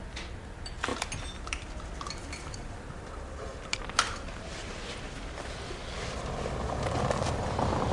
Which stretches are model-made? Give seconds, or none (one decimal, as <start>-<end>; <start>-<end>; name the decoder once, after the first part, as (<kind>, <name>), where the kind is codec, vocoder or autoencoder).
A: none

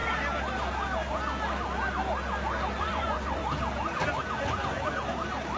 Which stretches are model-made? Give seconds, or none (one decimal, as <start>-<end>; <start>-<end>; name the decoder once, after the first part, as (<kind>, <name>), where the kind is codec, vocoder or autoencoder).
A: 2.8-3.4 (vocoder, Vocos)